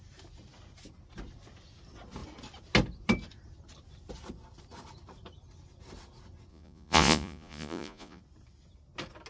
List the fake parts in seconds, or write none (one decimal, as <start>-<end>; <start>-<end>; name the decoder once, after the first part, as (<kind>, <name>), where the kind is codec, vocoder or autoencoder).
6.5-8.2 (vocoder, Vocos)